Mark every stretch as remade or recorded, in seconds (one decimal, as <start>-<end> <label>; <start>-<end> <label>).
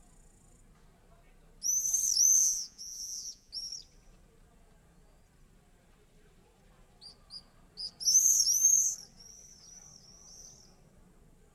0.0-2.4 recorded; 2.4-3.5 remade; 3.5-11.5 recorded